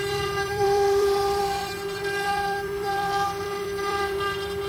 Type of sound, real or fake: fake